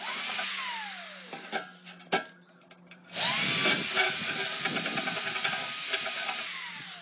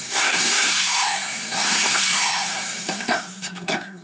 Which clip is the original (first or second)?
first